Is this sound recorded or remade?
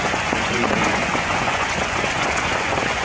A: remade